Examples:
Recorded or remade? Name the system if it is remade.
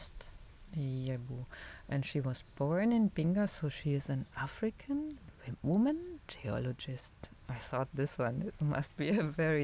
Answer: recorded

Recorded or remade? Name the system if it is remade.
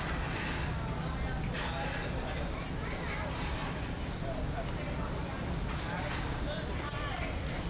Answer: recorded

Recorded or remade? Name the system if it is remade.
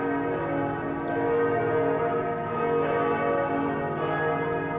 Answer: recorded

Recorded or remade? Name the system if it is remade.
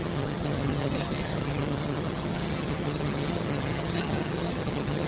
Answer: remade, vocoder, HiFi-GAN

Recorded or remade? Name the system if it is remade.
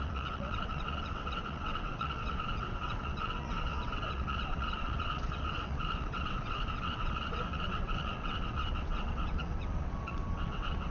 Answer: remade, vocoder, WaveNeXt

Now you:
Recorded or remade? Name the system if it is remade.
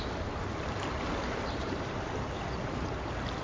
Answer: recorded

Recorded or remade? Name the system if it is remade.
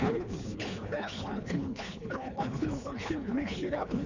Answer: remade, codec, HILCodec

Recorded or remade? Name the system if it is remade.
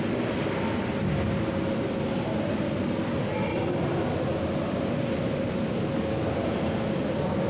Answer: recorded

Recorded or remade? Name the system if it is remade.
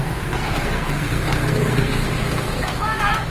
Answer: remade, codec, SNAC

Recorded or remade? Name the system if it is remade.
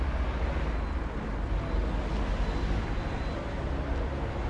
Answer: recorded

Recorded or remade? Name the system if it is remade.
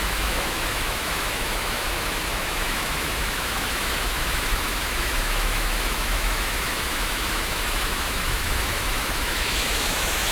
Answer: remade, autoencoder, DAC-VAE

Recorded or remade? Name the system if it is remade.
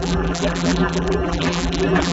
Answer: remade, vocoder, BigVGAN v2